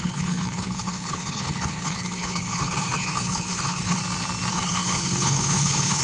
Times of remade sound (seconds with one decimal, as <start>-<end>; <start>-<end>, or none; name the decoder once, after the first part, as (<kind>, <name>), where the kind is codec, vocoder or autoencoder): 0.0-4.0 (codec, HILCodec); 4.5-6.0